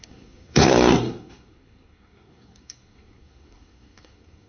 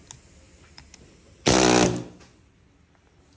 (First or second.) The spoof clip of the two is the first